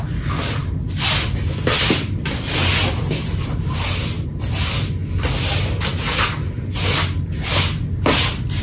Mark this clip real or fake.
real